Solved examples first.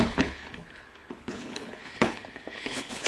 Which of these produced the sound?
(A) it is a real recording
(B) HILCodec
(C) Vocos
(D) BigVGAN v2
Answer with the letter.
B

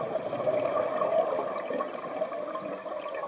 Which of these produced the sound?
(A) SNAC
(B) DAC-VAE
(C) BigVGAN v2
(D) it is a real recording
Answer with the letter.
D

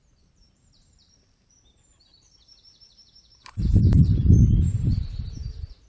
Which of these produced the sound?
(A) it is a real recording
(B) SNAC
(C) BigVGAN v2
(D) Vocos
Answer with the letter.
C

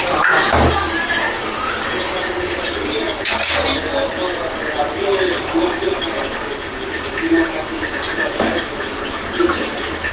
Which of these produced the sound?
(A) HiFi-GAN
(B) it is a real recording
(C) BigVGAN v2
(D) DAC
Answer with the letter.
B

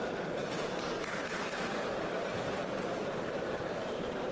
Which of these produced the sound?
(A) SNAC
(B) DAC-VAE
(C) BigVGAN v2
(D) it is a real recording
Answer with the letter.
C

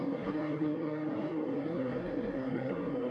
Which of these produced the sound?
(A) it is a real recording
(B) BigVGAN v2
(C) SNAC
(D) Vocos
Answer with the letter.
C